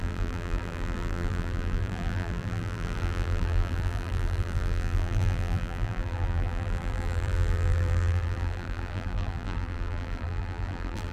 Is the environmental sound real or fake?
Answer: fake